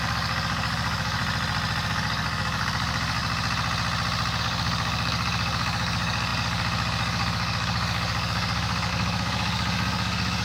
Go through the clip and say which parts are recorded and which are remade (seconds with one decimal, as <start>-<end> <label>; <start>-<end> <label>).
0.0-1.2 remade; 1.2-1.9 recorded; 1.9-3.2 remade; 3.2-4.4 recorded; 4.4-10.4 remade